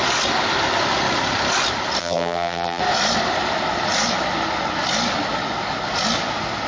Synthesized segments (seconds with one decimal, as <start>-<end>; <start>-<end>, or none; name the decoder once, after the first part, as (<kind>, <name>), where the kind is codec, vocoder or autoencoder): 2.0-2.8 (vocoder, BigVGAN v2)